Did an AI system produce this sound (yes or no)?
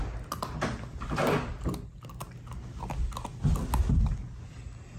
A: no